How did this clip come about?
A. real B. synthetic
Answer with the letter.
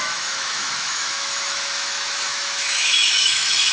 B